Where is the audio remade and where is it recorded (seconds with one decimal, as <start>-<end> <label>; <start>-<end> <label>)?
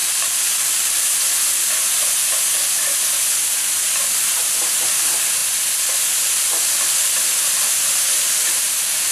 0.0-1.2 remade; 1.2-3.5 recorded; 3.5-4.5 remade; 4.5-9.1 recorded